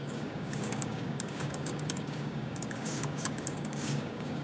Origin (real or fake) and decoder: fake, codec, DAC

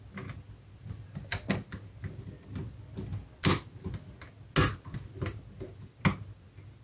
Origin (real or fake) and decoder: real